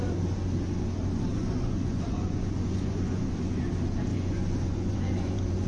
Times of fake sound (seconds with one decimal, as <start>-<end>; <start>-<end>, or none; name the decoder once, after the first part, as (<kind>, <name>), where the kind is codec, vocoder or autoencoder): 1.3-3.6 (vocoder, Vocos); 4.1-5.7